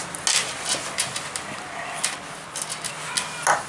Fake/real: real